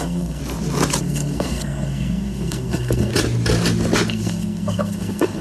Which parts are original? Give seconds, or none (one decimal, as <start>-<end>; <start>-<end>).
0.4-1.0; 3.1-4.1